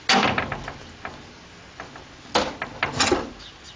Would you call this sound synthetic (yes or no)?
no